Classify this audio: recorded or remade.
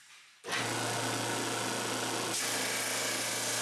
recorded